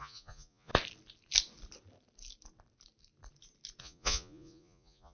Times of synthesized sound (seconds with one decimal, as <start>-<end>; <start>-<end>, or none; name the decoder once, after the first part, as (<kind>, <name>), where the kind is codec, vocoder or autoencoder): 0.0-0.7 (vocoder, Vocos); 3.8-5.1